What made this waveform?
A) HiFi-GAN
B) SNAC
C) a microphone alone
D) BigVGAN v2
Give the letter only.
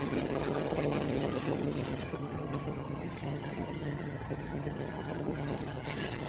A